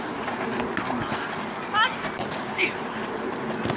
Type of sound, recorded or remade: recorded